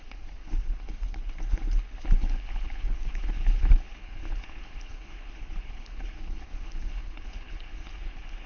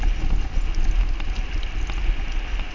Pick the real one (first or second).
second